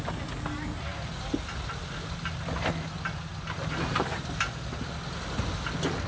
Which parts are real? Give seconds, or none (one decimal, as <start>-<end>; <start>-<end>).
0.0-6.1